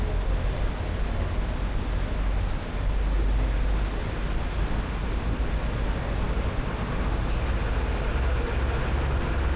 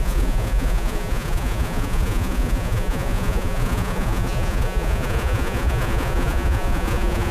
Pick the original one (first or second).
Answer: first